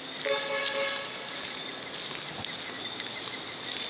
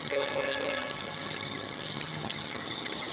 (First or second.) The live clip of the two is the first